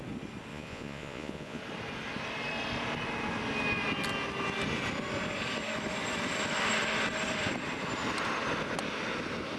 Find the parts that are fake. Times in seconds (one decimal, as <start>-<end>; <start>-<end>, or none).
0.5-1.6